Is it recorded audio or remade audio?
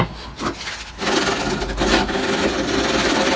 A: recorded